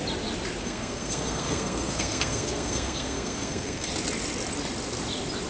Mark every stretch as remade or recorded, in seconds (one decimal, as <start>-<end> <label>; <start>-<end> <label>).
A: 0.0-0.6 recorded; 0.6-3.9 remade; 3.9-5.5 recorded